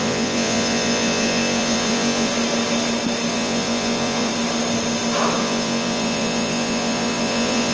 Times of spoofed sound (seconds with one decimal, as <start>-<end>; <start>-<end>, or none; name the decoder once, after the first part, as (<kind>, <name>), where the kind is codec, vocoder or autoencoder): 0.0-2.3 (vocoder, Vocos); 3.3-4.3; 5.4-7.7